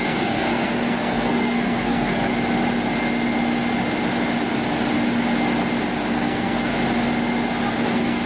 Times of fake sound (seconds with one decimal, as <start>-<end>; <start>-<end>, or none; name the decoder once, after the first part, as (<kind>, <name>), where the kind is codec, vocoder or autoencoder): 0.0-2.3 (codec, SNAC); 6.1-6.7; 7.7-8.3